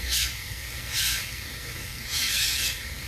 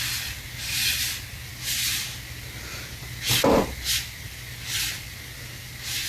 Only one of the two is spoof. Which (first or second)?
first